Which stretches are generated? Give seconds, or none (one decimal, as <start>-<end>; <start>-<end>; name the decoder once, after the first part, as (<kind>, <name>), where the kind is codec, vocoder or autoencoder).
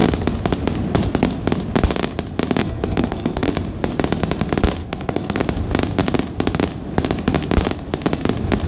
2.6-3.5 (codec, SNAC); 4.8-5.4